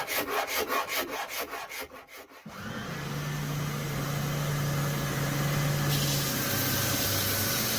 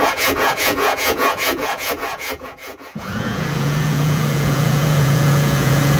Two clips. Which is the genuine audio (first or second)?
first